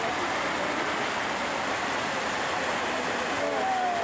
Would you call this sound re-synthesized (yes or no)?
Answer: no